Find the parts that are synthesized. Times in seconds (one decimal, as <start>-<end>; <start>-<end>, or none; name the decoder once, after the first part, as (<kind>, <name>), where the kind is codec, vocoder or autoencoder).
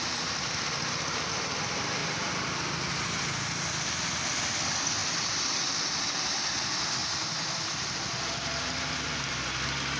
none